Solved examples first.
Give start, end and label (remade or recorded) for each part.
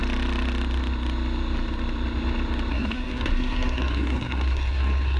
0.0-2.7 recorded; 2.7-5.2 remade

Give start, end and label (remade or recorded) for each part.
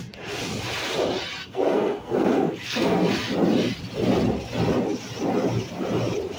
0.0-1.4 recorded; 1.4-3.1 remade; 3.1-6.4 recorded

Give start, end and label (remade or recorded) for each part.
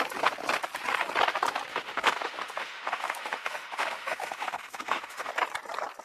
0.0-1.7 recorded; 1.7-5.3 remade; 5.3-6.0 recorded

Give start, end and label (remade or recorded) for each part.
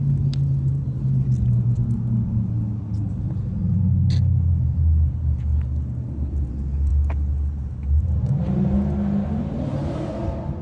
0.0-10.6 recorded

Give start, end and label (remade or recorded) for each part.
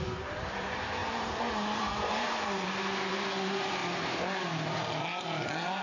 0.0-3.8 remade; 3.8-5.0 recorded; 5.0-5.8 remade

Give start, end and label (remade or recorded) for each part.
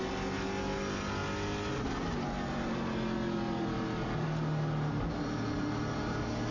0.0-6.5 recorded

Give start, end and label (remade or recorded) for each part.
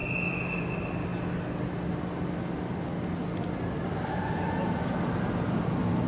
0.0-6.1 recorded